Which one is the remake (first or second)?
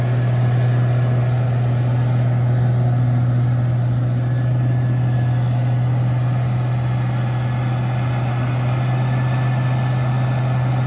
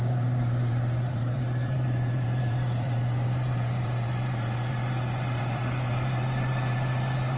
second